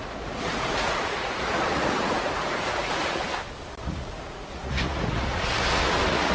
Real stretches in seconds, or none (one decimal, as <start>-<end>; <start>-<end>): 3.2-3.8